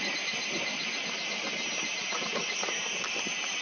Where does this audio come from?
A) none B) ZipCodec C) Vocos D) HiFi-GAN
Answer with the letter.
A